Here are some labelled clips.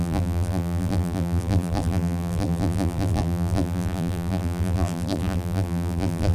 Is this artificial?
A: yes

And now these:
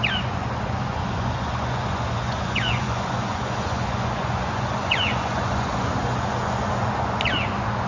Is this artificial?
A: yes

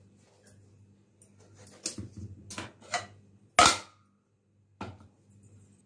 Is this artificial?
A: no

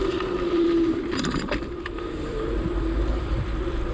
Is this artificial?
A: yes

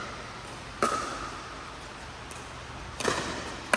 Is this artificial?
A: no